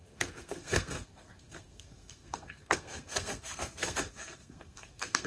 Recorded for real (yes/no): no